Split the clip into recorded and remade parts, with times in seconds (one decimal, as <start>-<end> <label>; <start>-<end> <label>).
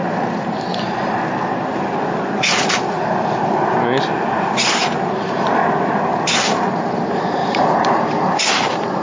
0.0-0.7 remade; 0.7-4.4 recorded; 4.4-5.6 remade; 5.6-6.4 recorded; 6.4-9.0 remade